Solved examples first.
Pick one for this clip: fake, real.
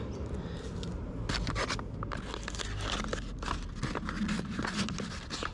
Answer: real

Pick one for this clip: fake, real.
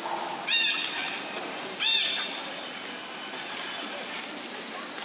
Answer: real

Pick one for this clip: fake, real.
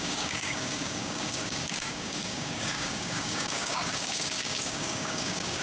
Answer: fake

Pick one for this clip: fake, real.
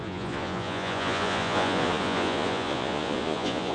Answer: fake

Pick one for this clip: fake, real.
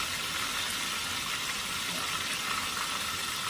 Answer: real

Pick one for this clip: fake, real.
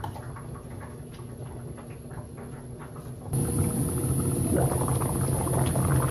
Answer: real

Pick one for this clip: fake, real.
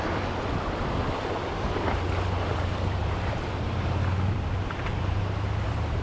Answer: real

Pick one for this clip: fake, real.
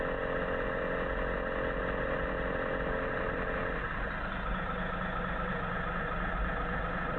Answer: real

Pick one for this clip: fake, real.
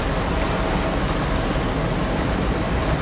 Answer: real